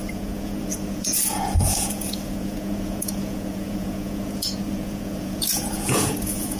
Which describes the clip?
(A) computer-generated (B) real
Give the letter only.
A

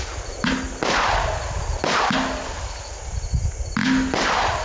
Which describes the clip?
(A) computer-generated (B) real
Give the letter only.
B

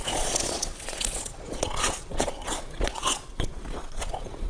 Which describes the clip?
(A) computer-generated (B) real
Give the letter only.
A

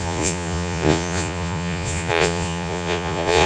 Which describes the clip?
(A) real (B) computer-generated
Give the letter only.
B